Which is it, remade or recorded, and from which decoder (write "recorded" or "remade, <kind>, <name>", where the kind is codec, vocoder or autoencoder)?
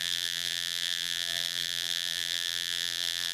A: remade, vocoder, BigVGAN v2